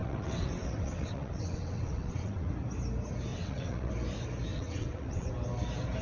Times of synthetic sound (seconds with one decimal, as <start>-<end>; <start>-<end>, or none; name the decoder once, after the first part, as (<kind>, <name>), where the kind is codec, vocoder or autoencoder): 0.0-2.5 (vocoder, WaveNeXt); 3.3-3.9; 4.5-5.3